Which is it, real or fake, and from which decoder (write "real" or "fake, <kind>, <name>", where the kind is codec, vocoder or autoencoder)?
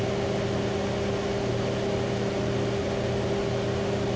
real